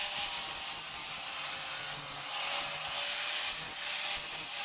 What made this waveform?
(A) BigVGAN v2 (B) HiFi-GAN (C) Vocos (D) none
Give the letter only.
D